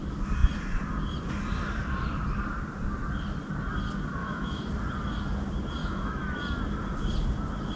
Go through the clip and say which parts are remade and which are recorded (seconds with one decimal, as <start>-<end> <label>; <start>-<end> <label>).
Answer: 0.0-4.2 recorded; 4.2-4.7 remade; 4.7-5.8 recorded; 5.8-6.4 remade; 6.4-7.8 recorded